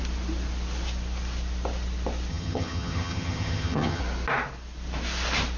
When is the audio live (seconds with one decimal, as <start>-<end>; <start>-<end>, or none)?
0.0-2.3; 4.0-5.6